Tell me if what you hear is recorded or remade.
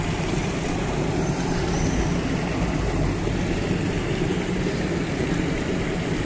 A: recorded